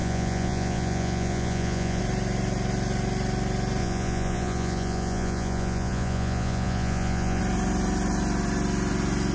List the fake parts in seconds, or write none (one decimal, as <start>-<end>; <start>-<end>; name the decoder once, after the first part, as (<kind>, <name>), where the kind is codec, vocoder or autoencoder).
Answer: 0.0-2.0 (vocoder, Vocos); 3.8-7.4